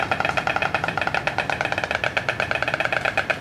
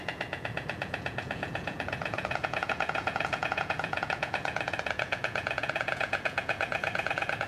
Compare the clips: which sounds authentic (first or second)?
first